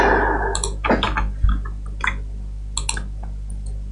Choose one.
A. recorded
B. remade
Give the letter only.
A